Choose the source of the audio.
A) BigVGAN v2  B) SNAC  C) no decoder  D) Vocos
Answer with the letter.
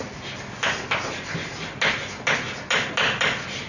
C